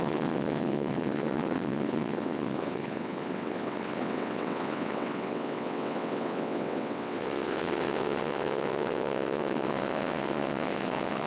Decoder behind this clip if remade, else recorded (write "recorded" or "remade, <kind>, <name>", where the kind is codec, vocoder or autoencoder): remade, vocoder, WaveNeXt